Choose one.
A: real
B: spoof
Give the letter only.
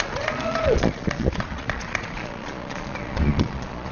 B